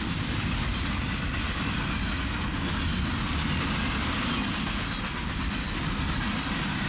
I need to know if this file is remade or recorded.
recorded